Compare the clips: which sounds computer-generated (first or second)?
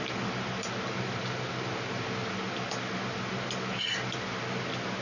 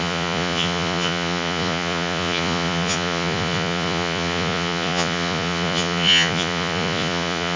second